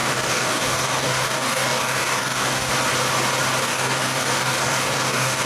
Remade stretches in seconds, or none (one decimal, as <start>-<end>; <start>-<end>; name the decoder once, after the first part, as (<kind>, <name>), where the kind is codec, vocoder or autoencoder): 0.0-2.7 (codec, DAC); 3.6-5.5